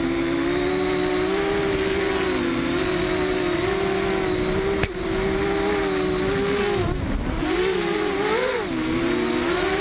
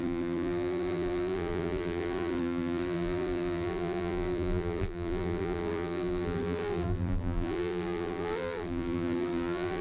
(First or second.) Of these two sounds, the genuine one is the first